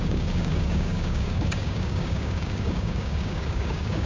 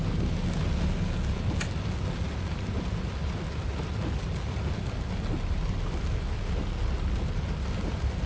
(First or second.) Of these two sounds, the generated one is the first